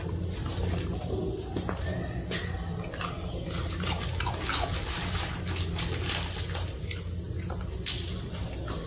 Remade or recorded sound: recorded